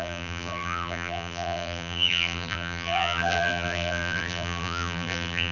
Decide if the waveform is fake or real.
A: fake